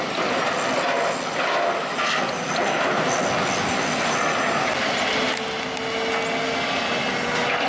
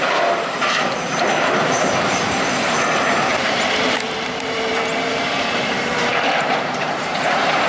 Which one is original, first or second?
first